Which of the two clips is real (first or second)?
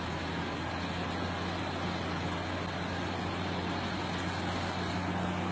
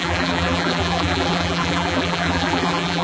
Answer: first